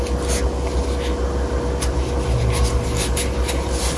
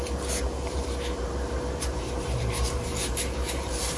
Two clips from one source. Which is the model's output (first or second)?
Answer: second